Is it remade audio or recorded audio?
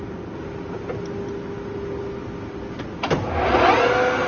recorded